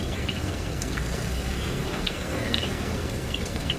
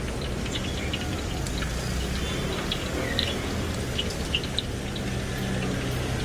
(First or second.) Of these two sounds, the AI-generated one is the first